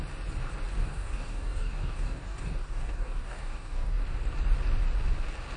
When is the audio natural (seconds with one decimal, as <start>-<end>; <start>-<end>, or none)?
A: 0.0-0.8; 4.0-5.6